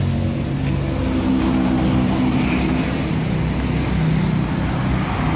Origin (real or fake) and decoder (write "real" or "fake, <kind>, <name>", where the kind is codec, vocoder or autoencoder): real